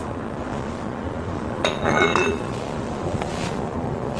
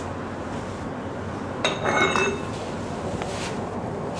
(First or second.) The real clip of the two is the second